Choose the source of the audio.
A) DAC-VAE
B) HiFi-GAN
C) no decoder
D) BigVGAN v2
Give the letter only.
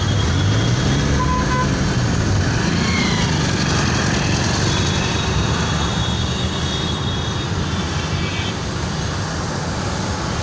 C